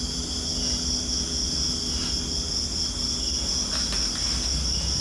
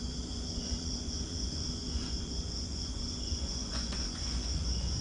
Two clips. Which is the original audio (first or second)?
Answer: first